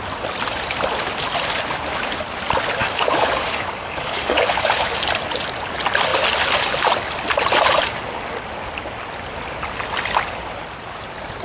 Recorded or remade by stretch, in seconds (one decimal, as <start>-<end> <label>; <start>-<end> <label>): 0.0-2.8 recorded; 2.8-4.8 remade; 4.8-11.4 recorded